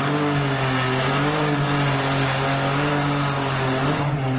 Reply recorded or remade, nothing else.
recorded